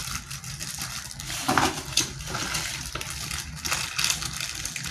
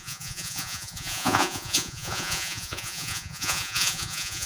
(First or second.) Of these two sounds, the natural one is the first